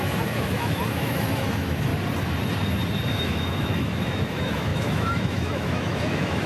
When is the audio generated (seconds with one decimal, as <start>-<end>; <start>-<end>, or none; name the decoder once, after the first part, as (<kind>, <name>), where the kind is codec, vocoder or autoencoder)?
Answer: 0.0-1.9 (autoencoder, DAC-VAE); 3.1-6.5